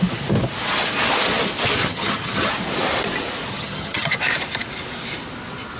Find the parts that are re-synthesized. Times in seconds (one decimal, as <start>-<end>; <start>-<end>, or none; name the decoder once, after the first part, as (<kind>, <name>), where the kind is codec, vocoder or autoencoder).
1.8-2.5 (vocoder, HiFi-GAN); 3.5-4.2

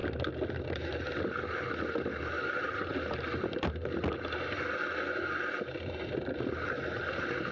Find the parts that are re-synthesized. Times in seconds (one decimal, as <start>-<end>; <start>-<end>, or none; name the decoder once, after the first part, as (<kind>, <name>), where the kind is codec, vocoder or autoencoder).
none

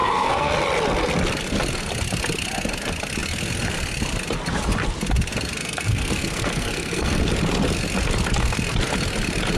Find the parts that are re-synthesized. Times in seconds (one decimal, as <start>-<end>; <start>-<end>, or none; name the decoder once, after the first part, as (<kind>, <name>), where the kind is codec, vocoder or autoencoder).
0.0-0.5 (codec, SNAC); 5.6-7.2

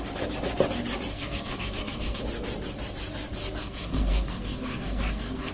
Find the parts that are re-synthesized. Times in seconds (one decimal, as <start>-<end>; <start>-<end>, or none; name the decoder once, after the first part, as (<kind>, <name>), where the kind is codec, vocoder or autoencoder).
1.1-2.2 (codec, SNAC); 3.6-5.5